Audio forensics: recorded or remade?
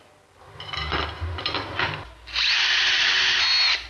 recorded